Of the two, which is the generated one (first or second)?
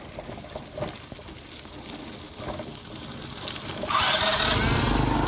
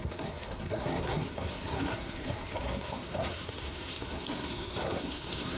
second